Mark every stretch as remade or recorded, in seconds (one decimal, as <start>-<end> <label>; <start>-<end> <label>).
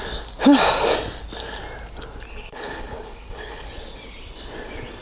0.0-2.3 recorded; 2.3-3.7 remade; 3.7-5.0 recorded